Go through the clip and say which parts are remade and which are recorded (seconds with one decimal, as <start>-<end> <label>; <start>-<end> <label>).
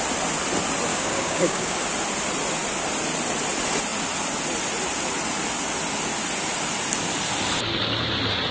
0.0-0.9 recorded; 0.9-1.8 remade; 1.8-8.5 recorded